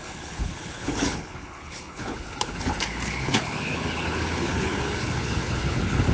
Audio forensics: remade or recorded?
remade